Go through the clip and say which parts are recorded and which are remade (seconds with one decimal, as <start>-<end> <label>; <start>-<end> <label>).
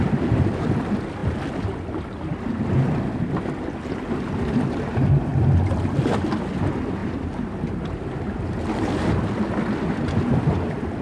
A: 0.0-7.0 recorded; 7.0-8.9 remade; 8.9-11.0 recorded